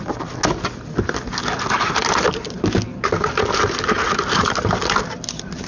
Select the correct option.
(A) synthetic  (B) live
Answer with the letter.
B